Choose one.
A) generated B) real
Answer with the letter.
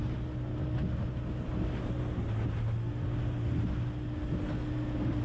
B